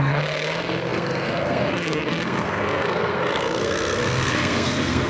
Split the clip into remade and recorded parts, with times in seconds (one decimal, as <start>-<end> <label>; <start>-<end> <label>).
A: 0.0-5.1 remade